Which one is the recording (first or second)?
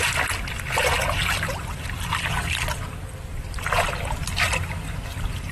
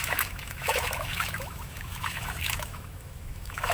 first